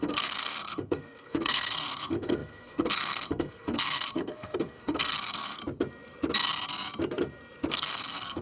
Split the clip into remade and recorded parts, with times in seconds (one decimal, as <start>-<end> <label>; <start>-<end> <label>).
0.0-5.6 remade; 5.6-7.7 recorded; 7.7-8.4 remade